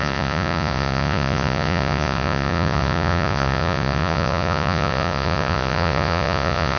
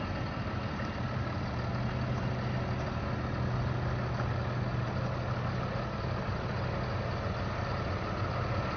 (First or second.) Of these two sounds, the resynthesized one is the first